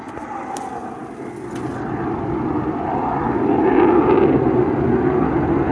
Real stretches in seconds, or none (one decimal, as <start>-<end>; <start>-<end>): 0.0-5.7